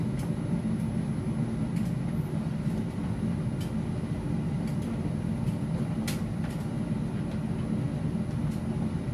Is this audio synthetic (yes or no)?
no